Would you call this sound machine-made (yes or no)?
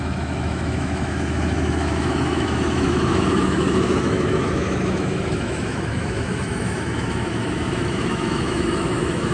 yes